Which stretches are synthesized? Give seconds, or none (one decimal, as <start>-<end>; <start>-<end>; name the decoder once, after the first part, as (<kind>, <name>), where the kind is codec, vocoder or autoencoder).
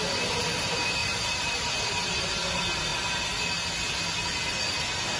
1.0-2.3 (vocoder, BigVGAN v2)